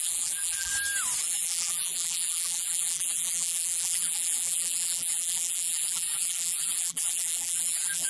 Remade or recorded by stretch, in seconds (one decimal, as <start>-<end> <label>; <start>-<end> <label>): 0.0-0.7 remade; 0.7-1.2 recorded; 1.2-8.1 remade